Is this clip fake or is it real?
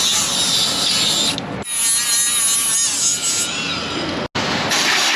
real